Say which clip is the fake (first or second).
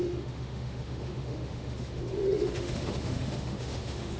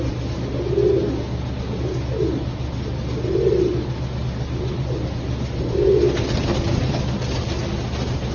first